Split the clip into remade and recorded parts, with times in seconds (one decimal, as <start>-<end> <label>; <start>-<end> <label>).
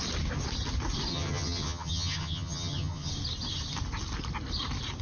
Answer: 0.0-1.1 recorded; 1.1-3.1 remade; 3.1-5.0 recorded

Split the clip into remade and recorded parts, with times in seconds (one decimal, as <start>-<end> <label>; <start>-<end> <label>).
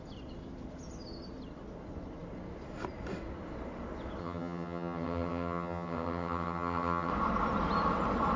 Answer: 0.0-4.2 recorded; 4.2-7.1 remade; 7.1-8.4 recorded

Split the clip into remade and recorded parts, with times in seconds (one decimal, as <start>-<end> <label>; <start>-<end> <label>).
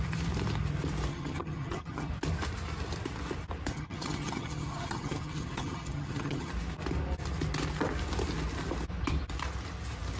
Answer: 0.0-1.1 recorded; 1.1-2.1 remade; 2.1-3.7 recorded; 3.7-6.5 remade; 6.5-10.2 recorded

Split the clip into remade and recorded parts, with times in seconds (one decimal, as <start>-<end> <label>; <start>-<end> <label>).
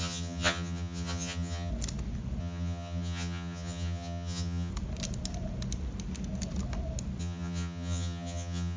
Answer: 0.0-1.7 remade; 1.7-2.4 recorded; 2.4-4.7 remade; 4.7-7.2 recorded; 7.2-8.8 remade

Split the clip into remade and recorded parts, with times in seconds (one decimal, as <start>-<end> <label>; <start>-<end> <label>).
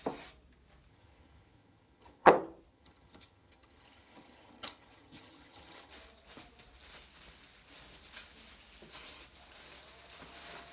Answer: 0.0-0.9 recorded; 0.9-2.3 remade; 2.3-2.7 recorded; 2.7-5.9 remade; 5.9-10.7 recorded